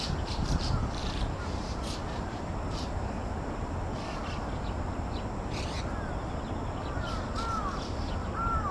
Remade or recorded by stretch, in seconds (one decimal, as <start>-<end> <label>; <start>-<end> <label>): 0.0-3.2 remade; 3.2-7.4 recorded; 7.4-8.7 remade